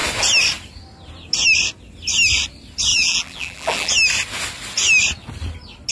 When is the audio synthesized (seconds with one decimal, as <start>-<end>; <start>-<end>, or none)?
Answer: 2.9-3.9